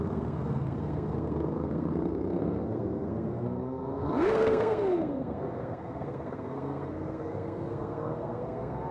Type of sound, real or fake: fake